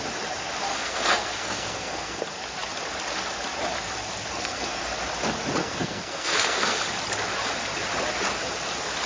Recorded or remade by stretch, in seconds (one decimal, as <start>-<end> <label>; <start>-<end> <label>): 0.0-0.7 recorded; 0.7-2.2 remade; 2.2-4.3 recorded; 4.3-4.8 remade; 4.8-5.6 recorded; 5.6-6.8 remade; 6.8-9.1 recorded